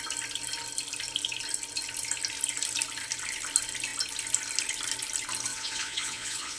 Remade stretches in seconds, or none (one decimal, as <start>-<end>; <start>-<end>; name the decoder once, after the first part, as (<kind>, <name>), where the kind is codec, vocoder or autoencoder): 5.5-6.6 (vocoder, Vocos)